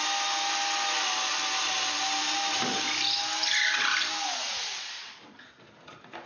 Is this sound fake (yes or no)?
no